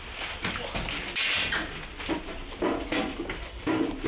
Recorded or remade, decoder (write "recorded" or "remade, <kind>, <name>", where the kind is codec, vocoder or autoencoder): recorded